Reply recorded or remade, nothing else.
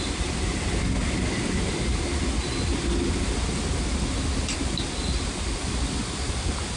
recorded